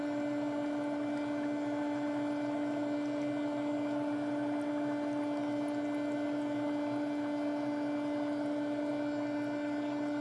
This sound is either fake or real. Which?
real